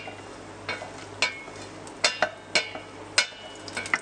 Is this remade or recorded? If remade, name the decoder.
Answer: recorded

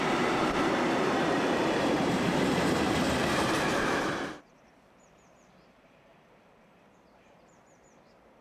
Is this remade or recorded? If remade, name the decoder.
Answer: remade, vocoder, BigVGAN v2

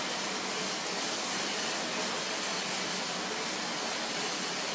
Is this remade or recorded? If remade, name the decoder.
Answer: recorded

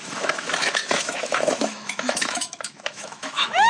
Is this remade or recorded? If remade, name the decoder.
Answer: remade, autoencoder, DAC-VAE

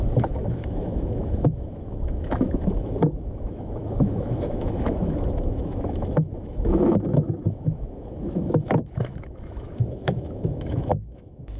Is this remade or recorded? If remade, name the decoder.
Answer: remade, autoencoder, DAC-VAE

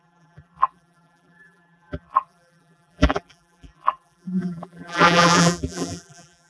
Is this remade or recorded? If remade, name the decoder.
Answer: remade, vocoder, BigVGAN v2